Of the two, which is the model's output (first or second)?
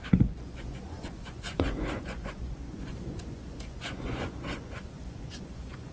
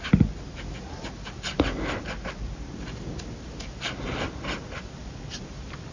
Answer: first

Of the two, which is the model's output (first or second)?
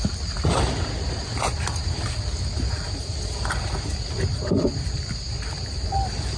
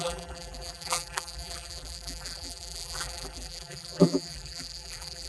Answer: second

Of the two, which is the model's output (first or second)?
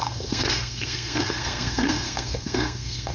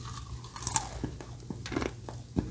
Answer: first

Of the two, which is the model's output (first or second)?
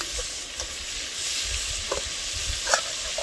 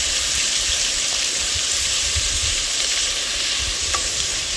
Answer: second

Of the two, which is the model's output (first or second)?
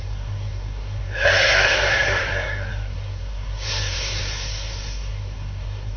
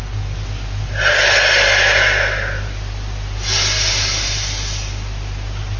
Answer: first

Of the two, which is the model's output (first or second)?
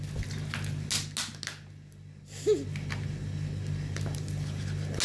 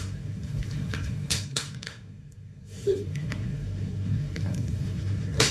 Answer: second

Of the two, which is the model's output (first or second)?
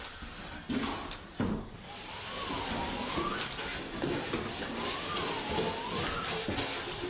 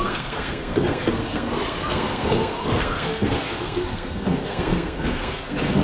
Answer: second